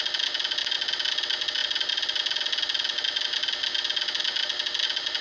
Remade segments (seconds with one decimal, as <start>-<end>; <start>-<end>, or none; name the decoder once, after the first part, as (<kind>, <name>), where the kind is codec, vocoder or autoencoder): none